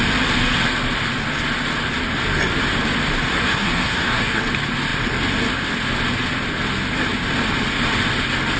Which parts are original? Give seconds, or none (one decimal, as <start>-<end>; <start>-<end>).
0.0-3.3; 4.4-8.6